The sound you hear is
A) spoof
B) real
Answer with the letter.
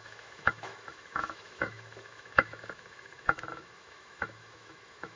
A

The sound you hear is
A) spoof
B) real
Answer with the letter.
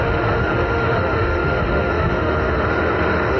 A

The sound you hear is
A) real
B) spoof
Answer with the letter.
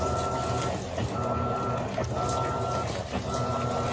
A